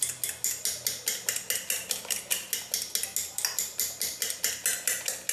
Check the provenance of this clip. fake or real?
real